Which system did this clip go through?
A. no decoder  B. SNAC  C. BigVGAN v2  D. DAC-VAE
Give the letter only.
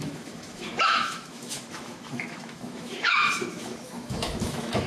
D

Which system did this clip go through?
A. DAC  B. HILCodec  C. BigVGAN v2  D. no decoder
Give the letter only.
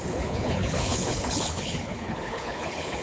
B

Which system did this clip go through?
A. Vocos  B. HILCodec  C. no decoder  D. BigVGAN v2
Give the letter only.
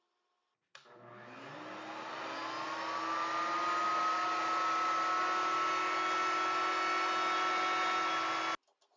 C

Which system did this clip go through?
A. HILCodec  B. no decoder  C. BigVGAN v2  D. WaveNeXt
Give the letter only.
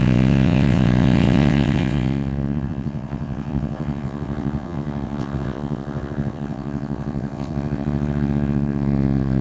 D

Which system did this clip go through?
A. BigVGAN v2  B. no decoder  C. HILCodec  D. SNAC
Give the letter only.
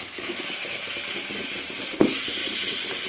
B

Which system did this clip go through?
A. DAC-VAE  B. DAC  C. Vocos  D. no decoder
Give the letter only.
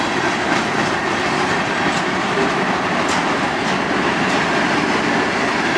D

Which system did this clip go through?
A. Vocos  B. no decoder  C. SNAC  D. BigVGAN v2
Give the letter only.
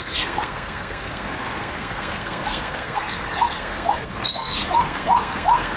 C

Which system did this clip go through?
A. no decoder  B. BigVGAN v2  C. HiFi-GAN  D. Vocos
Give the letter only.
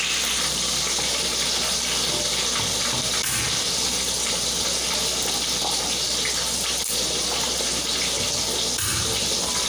A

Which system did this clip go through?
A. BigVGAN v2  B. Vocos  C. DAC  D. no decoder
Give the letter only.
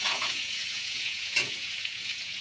B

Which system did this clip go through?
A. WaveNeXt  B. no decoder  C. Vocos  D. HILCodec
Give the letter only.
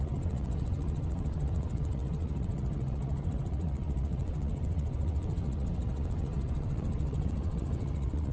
A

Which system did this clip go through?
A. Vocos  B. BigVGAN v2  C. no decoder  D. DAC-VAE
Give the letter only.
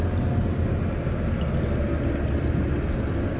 C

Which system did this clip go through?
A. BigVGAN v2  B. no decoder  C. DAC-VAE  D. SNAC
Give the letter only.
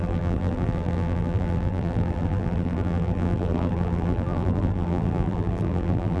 A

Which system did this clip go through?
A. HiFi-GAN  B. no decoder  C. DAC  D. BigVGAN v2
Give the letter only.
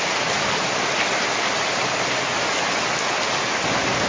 B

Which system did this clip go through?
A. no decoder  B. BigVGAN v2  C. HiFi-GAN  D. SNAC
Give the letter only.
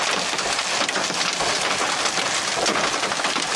A